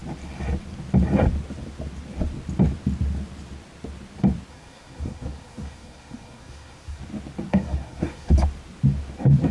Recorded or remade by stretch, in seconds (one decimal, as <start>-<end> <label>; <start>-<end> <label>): 0.0-4.5 recorded; 4.5-7.0 remade; 7.0-7.5 recorded; 7.5-8.3 remade; 8.3-9.5 recorded